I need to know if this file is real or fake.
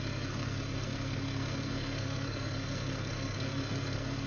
fake